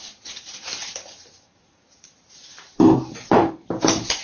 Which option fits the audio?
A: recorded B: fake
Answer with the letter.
B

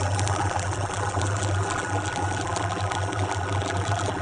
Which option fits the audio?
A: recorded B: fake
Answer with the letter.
B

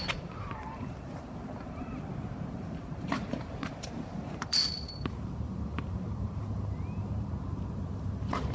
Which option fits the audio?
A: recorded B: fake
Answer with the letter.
B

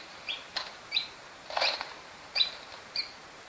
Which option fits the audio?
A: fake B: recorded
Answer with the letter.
A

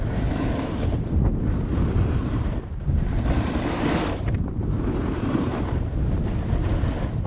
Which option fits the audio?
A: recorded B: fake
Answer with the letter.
B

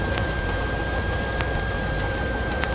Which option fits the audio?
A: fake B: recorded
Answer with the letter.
B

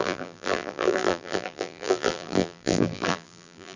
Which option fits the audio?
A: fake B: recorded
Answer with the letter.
A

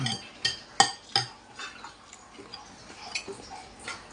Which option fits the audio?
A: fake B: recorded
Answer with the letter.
B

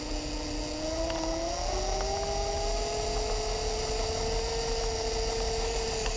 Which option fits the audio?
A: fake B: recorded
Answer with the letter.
B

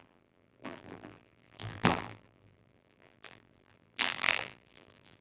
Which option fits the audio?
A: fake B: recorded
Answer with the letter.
A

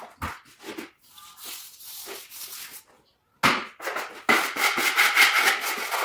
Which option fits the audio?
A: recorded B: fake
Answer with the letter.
A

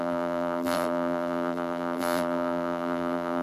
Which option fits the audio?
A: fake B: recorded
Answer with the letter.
A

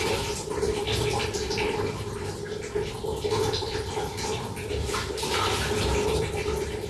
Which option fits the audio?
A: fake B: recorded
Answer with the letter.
A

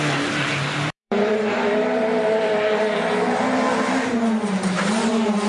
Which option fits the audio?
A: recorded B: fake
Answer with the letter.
B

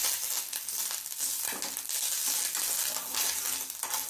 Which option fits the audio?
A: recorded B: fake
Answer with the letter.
A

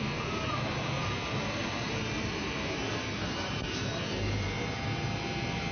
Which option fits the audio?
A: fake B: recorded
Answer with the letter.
A